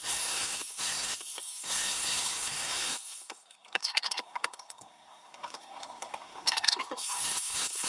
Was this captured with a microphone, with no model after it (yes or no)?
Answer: no